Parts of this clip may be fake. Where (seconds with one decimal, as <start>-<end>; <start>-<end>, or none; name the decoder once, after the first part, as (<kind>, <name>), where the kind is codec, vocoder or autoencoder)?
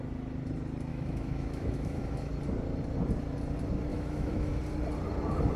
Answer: 0.9-2.3 (autoencoder, DAC-VAE); 3.9-4.6